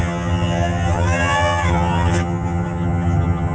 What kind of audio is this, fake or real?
fake